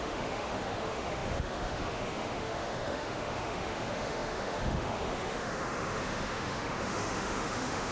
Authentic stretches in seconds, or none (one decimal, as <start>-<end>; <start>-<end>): none